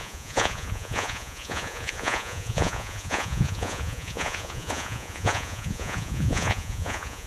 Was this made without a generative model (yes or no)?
no